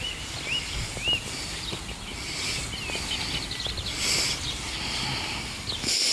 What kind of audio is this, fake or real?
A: real